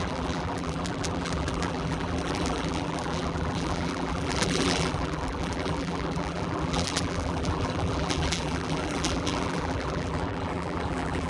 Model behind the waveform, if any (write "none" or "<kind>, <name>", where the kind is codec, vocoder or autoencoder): vocoder, BigVGAN v2